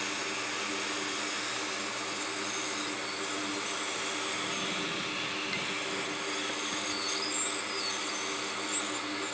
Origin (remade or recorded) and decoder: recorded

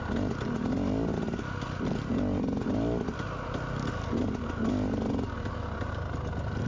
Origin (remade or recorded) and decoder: recorded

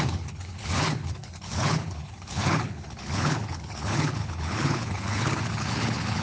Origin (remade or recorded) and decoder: remade, codec, HILCodec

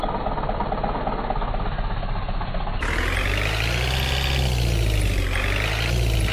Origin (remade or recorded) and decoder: recorded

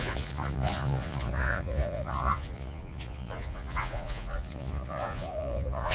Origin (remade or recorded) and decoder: remade, vocoder, Vocos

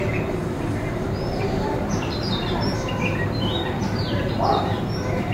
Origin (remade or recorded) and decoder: remade, vocoder, BigVGAN v2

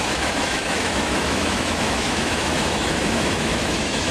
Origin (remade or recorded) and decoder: remade, autoencoder, DAC-VAE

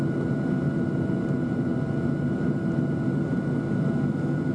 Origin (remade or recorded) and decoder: recorded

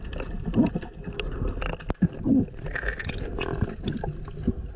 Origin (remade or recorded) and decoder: recorded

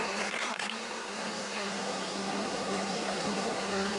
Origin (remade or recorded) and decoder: remade, codec, SNAC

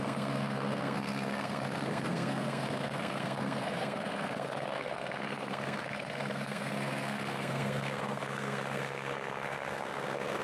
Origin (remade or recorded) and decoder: remade, codec, SNAC